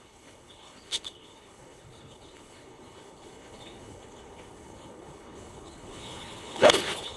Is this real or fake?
fake